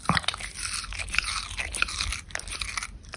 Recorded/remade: remade